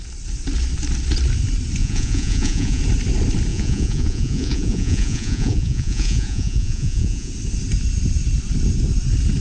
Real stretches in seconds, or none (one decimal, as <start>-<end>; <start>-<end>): 0.0-1.8; 2.8-3.5; 7.3-9.4